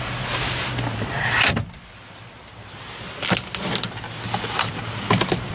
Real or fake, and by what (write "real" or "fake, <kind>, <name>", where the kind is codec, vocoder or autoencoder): real